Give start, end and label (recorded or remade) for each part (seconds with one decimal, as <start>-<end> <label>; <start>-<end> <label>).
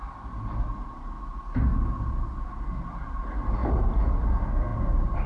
0.0-3.6 recorded; 3.6-4.1 remade; 4.1-4.7 recorded; 4.7-5.3 remade